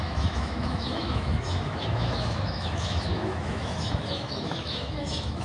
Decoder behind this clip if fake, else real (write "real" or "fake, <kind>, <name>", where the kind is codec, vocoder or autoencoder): fake, autoencoder, DAC-VAE